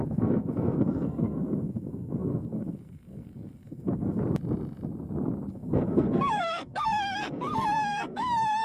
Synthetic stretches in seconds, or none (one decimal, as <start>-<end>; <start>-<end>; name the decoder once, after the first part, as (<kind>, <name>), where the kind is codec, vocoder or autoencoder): 0.0-4.2 (codec, SNAC); 5.5-8.6